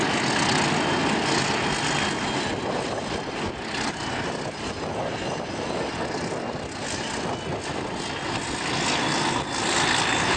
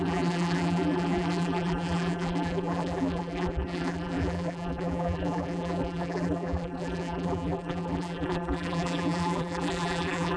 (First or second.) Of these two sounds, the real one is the first